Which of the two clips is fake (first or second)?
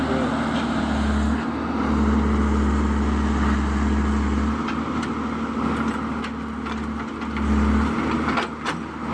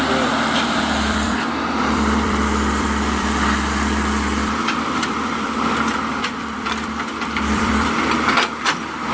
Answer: second